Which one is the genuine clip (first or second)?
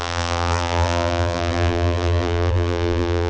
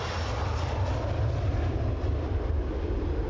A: second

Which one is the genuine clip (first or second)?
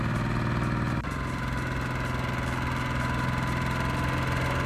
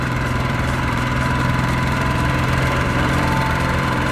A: first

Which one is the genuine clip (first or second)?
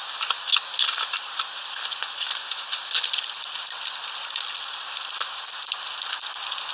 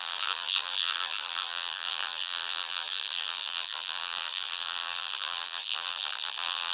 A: first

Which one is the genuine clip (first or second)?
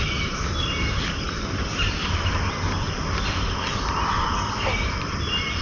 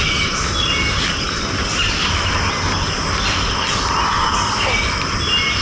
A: second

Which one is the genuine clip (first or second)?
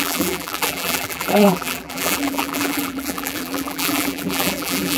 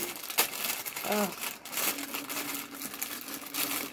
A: second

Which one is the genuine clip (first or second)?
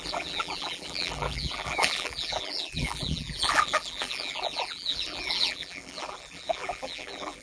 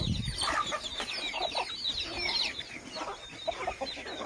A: second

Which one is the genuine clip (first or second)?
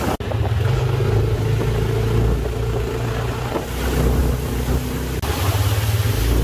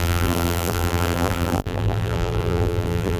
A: first